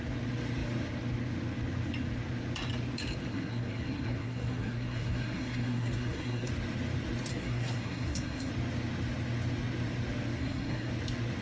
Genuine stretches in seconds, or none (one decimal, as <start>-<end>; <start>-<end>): 0.0-3.3; 6.5-7.3; 8.5-10.4; 10.9-11.4